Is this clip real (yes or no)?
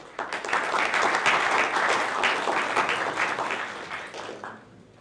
yes